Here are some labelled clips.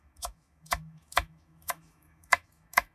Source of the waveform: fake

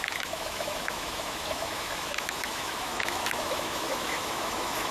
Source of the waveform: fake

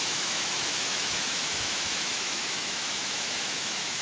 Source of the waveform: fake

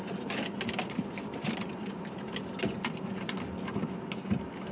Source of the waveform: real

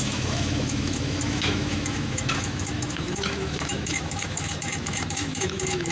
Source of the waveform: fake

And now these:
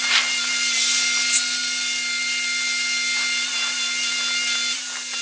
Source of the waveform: real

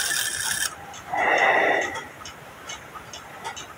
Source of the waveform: real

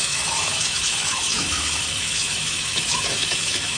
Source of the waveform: fake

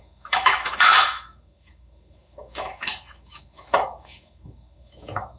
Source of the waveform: fake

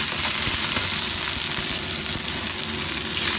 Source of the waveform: real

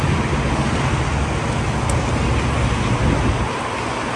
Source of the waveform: real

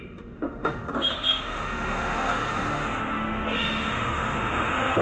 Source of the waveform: fake